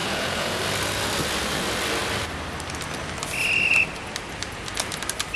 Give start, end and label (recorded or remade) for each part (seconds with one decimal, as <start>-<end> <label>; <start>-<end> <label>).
0.0-0.6 remade; 0.6-5.4 recorded